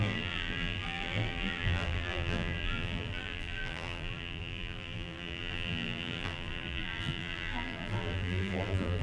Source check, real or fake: fake